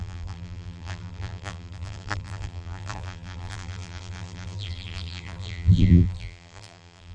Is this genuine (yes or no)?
no